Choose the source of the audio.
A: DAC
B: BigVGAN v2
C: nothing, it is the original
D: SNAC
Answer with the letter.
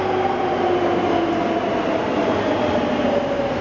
C